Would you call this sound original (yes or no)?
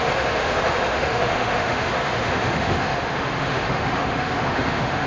no